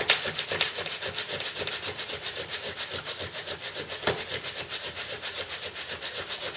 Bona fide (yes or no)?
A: yes